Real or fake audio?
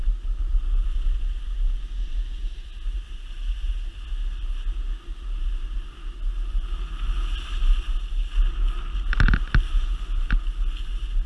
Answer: real